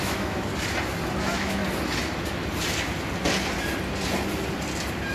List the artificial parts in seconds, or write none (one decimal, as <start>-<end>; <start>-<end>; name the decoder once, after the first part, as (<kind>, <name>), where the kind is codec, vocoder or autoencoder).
0.0-0.5 (autoencoder, DAC-VAE); 1.2-1.6